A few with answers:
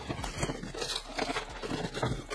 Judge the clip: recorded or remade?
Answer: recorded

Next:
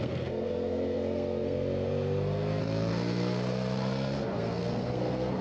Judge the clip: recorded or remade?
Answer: remade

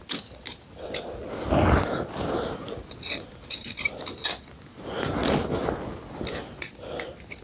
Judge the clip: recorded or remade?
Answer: recorded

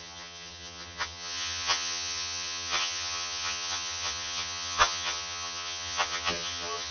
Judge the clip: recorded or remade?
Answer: remade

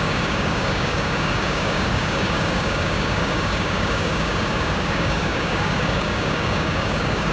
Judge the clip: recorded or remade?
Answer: remade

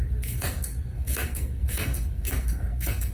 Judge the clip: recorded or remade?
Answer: remade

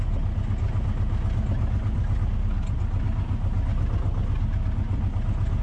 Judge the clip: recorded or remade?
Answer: recorded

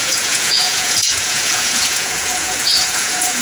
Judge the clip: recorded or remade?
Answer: remade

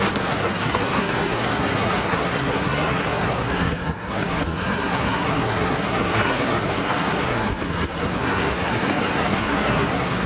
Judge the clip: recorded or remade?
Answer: remade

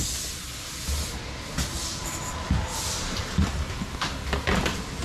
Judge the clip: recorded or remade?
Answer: recorded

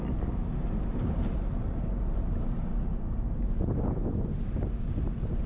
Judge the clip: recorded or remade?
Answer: recorded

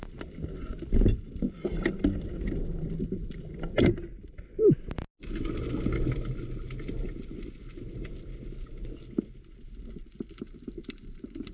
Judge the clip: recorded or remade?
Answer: recorded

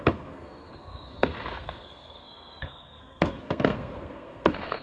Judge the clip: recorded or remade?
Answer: remade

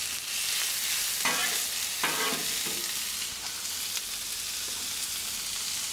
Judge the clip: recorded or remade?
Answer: recorded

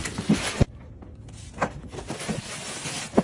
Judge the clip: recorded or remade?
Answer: recorded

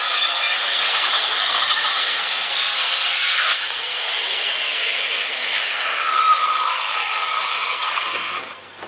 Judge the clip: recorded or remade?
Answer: remade